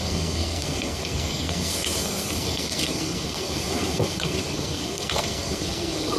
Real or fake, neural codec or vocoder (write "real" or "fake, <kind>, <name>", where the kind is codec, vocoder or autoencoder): fake, codec, SNAC